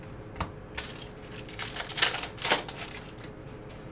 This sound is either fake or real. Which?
real